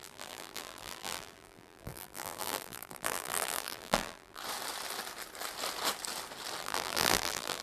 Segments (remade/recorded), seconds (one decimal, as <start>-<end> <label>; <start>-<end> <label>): 0.0-4.4 remade; 4.4-6.6 recorded; 6.6-7.6 remade